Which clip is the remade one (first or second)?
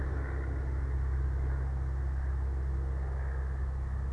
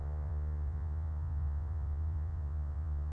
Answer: second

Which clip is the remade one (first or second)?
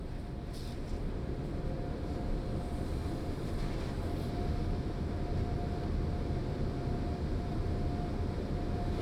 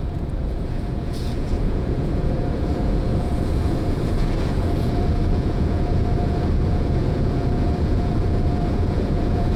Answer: second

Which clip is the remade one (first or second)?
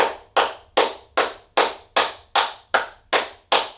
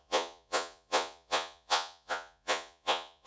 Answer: second